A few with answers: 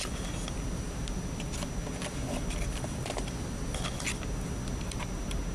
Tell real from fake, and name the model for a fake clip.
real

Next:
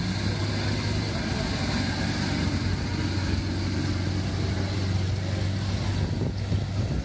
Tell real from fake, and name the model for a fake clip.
real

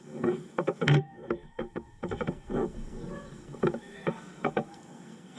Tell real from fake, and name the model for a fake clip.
fake, codec, SNAC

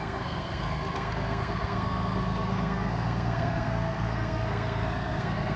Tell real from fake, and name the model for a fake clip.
fake, codec, SNAC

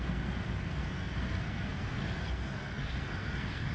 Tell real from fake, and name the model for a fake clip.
fake, codec, SNAC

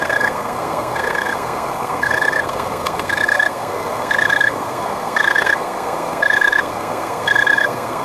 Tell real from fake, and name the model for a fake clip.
fake, codec, SNAC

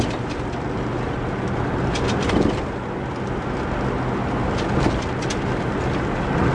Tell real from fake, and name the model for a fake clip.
real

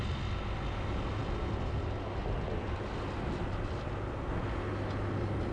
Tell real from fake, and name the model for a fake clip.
real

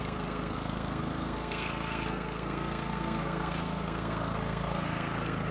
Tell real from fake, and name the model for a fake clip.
fake, codec, SNAC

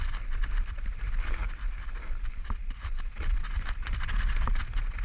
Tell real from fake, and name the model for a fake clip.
real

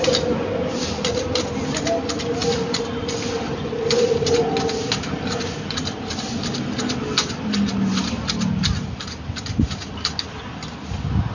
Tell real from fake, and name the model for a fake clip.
real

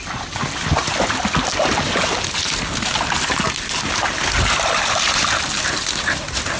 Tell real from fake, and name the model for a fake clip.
real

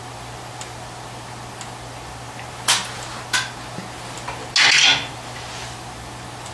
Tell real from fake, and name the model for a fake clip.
real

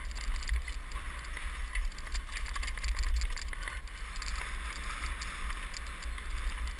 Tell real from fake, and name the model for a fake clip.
real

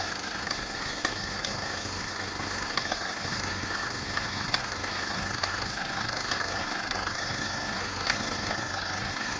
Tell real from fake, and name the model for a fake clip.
fake, codec, SNAC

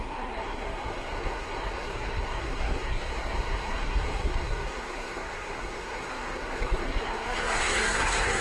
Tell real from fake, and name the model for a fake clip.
fake, codec, SNAC